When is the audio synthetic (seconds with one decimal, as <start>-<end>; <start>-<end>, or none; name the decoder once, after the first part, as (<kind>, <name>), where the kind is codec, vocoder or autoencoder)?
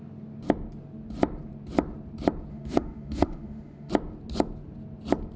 2.5-3.9 (autoencoder, DAC-VAE)